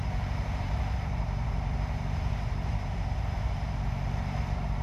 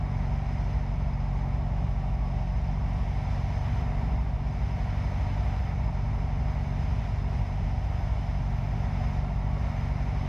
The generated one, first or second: first